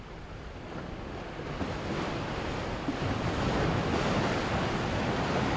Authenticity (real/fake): real